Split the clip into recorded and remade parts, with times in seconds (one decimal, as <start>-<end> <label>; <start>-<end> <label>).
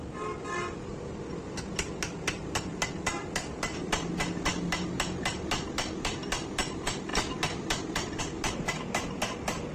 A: 0.0-9.7 recorded